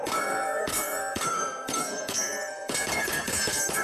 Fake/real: fake